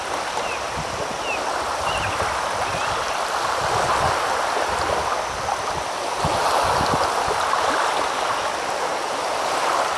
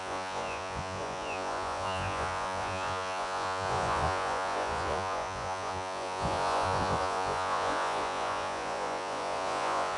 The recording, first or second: first